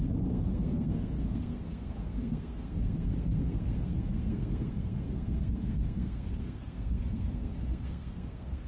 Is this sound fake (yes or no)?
yes